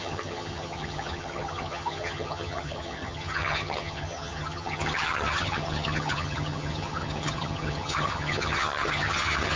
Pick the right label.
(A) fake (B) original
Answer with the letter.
A